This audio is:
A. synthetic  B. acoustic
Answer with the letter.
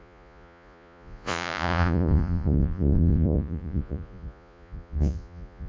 A